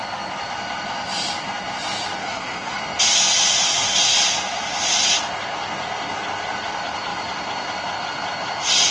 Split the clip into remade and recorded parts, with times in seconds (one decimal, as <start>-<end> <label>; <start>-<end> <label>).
0.0-2.2 recorded; 2.2-2.8 remade; 2.8-8.9 recorded

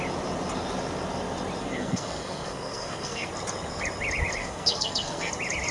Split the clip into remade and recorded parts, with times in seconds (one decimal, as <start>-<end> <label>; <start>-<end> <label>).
0.0-1.6 recorded; 1.6-3.3 remade; 3.3-4.4 recorded; 4.4-5.3 remade; 5.3-5.7 recorded

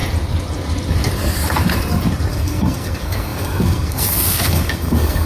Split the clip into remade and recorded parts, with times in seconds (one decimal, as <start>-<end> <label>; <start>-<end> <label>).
0.0-2.3 recorded; 2.3-5.3 remade

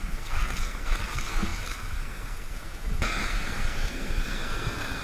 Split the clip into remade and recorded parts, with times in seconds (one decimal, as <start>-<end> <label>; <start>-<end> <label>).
0.0-5.0 remade

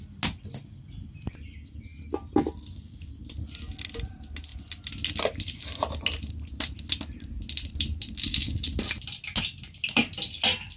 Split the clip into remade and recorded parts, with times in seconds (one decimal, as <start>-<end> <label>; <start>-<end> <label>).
0.0-10.8 recorded